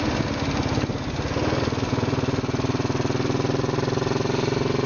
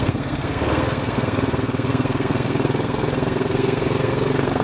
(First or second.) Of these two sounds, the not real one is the second